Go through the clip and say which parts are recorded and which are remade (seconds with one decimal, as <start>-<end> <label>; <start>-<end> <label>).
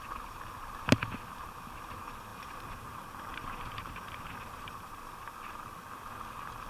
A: 0.0-2.3 recorded; 2.3-5.0 remade; 5.0-6.7 recorded